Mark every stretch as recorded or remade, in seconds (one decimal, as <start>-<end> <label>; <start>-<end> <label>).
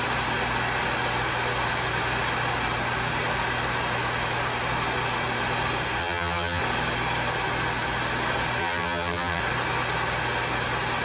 0.0-6.0 recorded; 6.0-6.6 remade; 6.6-8.6 recorded; 8.6-9.4 remade; 9.4-11.0 recorded